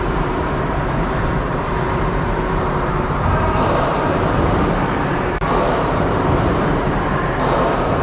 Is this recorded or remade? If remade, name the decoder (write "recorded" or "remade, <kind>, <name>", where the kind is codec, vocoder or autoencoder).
remade, vocoder, BigVGAN v2